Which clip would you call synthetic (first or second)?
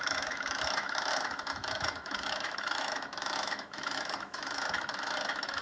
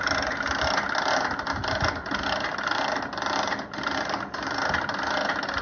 first